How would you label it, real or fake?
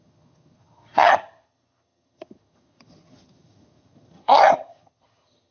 fake